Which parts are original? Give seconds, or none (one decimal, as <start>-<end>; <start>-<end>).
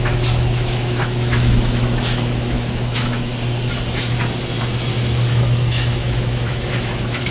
3.3-5.3